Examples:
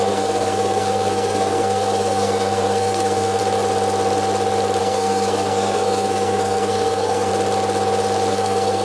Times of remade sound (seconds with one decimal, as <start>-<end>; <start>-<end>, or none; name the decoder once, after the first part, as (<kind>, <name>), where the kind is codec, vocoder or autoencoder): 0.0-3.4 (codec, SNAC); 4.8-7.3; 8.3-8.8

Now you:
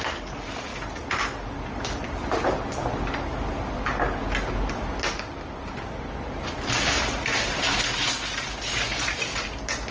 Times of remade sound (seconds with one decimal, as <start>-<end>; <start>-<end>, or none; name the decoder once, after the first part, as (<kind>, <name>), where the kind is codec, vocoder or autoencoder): none

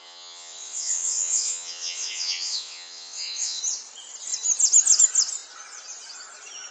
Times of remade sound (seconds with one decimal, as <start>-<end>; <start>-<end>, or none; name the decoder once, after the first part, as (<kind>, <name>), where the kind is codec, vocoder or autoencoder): 0.0-3.6 (vocoder, WaveNeXt)